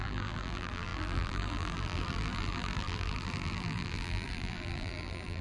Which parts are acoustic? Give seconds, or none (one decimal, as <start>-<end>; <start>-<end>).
none